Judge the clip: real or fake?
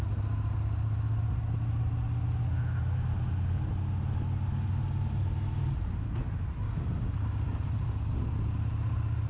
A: real